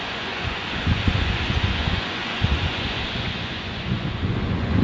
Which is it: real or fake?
fake